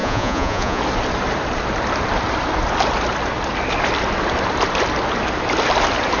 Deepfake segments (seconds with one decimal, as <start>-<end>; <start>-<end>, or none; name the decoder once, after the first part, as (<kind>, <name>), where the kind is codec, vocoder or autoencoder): 0.0-0.8 (vocoder, Vocos)